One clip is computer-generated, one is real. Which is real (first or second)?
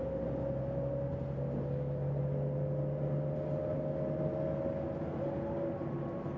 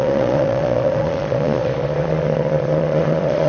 first